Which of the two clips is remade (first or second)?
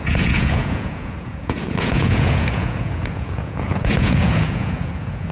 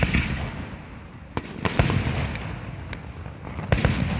first